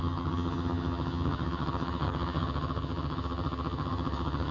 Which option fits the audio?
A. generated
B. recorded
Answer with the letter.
A